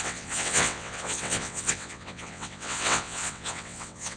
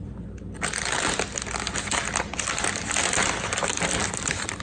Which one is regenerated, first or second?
first